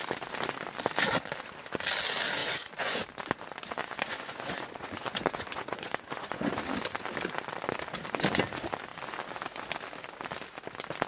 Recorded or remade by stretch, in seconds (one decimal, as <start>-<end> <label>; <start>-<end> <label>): 0.0-2.4 recorded; 2.4-3.0 remade; 3.0-3.8 recorded; 3.8-6.5 remade; 6.5-11.1 recorded